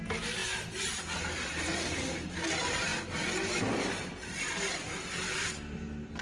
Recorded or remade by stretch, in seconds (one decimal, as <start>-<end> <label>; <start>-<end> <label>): 0.0-6.2 recorded